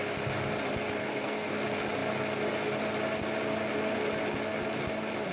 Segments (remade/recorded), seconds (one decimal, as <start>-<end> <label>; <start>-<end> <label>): 0.0-1.0 recorded; 1.0-1.5 remade; 1.5-5.3 recorded